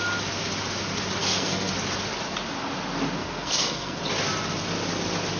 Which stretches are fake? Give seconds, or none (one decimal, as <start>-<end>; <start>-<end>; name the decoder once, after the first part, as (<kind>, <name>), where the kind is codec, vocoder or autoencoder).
1.2-1.7 (codec, SNAC); 3.2-4.0